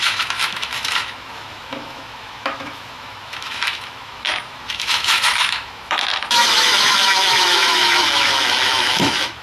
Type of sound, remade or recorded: remade